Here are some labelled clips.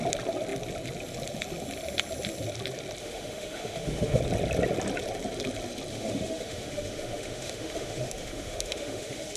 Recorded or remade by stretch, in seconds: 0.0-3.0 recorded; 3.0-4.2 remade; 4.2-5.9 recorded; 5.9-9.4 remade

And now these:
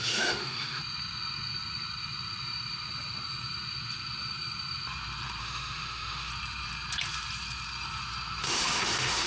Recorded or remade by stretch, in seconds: 0.0-0.8 remade; 0.8-5.4 recorded; 5.4-6.3 remade; 6.3-8.4 recorded; 8.4-9.3 remade

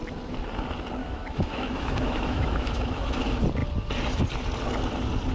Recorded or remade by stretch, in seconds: 0.0-1.0 recorded; 1.0-3.2 remade; 3.2-5.3 recorded

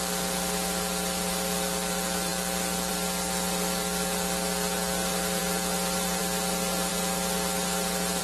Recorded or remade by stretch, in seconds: 0.0-8.2 recorded